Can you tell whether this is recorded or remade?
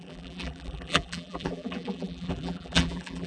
remade